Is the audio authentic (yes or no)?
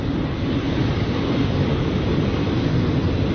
yes